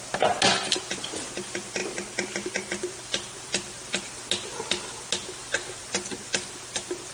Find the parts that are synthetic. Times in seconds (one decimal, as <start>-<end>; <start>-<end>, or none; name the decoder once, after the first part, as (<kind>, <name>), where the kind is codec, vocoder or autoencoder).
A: none